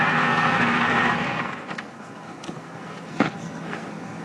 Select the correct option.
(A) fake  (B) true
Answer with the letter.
A